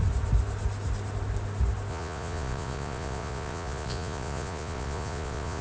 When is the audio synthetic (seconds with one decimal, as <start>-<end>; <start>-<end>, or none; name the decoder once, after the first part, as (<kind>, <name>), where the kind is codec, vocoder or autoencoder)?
1.9-5.6 (vocoder, Vocos)